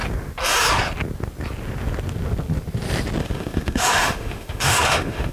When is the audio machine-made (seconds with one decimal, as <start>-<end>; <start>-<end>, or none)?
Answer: 3.2-5.3